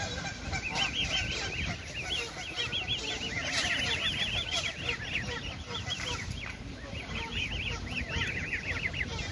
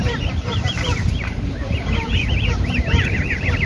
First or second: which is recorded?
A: first